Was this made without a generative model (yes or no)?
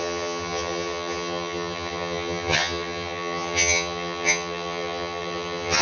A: no